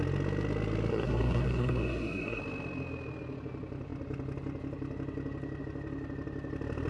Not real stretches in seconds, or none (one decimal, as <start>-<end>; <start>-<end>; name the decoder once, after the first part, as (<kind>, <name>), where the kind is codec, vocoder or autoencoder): 0.9-2.4 (codec, SNAC)